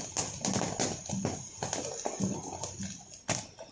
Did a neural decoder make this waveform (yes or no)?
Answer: no